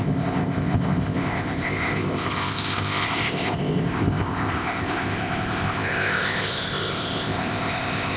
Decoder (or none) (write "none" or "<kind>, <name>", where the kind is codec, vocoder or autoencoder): codec, ZipCodec